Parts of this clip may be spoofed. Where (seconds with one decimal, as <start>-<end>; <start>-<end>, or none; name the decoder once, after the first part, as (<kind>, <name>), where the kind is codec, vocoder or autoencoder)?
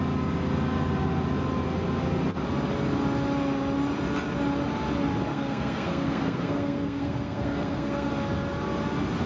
5.3-8.1 (codec, SNAC)